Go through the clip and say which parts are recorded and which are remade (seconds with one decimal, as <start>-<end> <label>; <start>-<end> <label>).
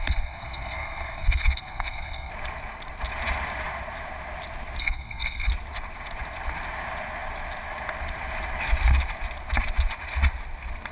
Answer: 0.0-2.3 remade; 2.3-4.8 recorded; 4.8-5.5 remade; 5.5-10.9 recorded